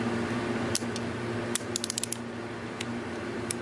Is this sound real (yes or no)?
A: yes